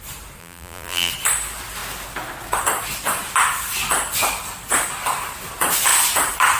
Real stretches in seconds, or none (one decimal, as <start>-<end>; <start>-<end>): 0.0-0.4; 1.1-6.6